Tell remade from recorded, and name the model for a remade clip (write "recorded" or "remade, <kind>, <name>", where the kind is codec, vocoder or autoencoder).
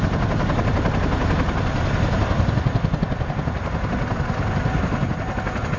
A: recorded